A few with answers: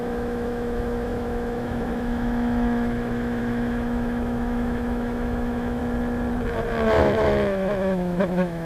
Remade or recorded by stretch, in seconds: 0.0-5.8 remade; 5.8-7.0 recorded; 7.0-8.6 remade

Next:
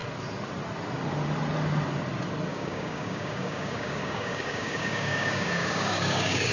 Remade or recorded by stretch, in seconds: 0.0-2.5 recorded; 2.5-6.5 remade